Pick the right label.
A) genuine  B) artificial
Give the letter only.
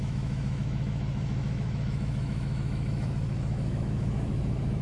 B